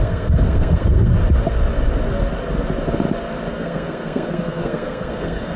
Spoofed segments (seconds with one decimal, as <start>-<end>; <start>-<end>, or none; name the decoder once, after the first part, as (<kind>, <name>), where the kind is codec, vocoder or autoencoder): 0.0-1.1 (codec, SNAC); 3.5-5.6